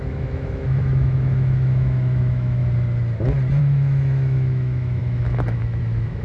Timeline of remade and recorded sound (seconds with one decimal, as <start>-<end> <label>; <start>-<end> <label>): 0.0-2.6 remade; 2.6-3.6 recorded; 3.6-6.2 remade